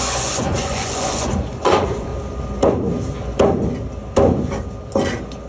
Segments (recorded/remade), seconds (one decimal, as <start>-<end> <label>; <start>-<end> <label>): 0.0-2.1 remade; 2.1-5.5 recorded